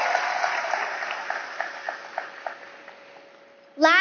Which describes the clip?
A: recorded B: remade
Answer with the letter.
A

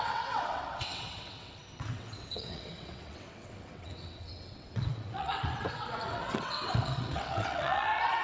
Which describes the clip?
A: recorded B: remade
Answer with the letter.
B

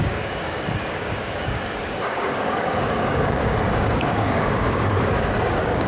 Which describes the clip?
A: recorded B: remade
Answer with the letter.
B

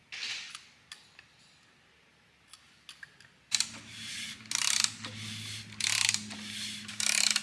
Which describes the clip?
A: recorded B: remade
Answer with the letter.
A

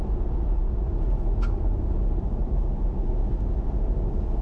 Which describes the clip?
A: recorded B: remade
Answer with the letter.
A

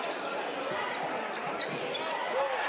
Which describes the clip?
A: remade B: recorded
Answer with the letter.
B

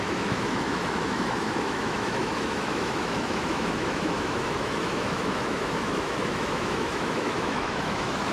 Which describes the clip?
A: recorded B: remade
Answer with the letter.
B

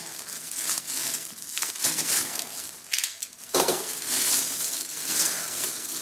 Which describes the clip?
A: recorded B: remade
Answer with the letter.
B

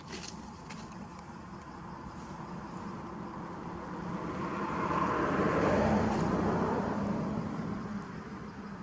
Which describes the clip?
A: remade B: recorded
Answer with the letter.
B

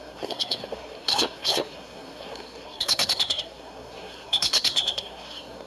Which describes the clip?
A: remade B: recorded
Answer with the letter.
A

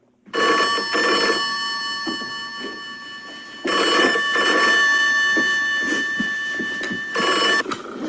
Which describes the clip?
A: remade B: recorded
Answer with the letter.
B